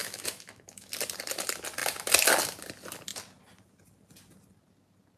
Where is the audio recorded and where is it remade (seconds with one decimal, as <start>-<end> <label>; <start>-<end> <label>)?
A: 0.0-0.9 remade; 0.9-5.2 recorded